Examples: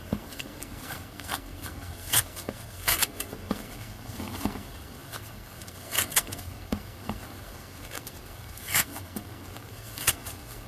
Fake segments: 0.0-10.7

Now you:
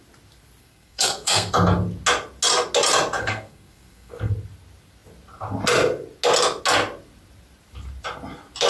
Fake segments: 0.6-1.5; 3.2-4.3

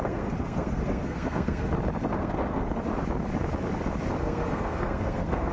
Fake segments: 0.0-1.7; 2.1-2.8; 4.2-5.5

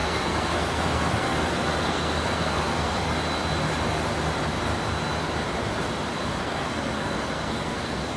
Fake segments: 0.0-3.1; 6.4-8.2